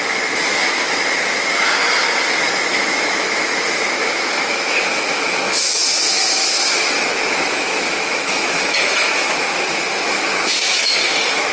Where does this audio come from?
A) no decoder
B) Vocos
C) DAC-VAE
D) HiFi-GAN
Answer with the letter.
C